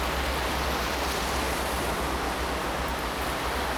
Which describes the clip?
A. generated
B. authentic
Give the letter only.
B